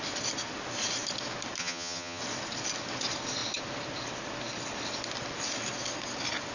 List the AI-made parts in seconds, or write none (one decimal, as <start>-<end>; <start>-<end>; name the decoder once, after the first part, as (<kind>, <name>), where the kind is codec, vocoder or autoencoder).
1.6-2.2 (vocoder, HiFi-GAN)